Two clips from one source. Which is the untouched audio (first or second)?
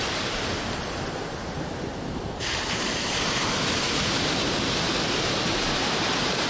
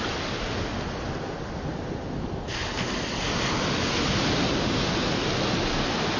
second